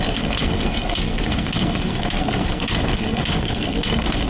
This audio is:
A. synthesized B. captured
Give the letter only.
A